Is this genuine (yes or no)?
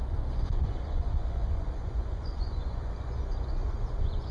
no